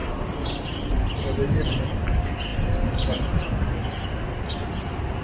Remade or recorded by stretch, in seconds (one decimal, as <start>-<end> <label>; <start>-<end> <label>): 0.0-1.2 remade; 1.2-2.5 recorded; 2.5-3.8 remade; 3.8-5.2 recorded